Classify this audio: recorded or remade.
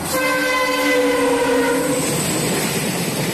recorded